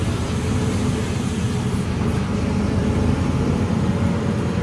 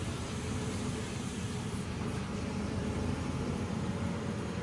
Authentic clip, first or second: first